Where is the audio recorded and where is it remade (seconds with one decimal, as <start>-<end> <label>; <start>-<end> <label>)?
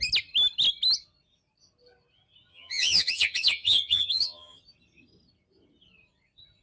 0.0-2.5 recorded; 2.5-4.6 remade; 4.6-6.6 recorded